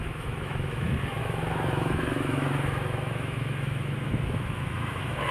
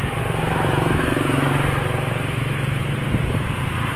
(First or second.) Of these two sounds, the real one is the second